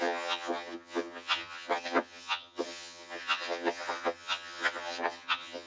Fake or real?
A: fake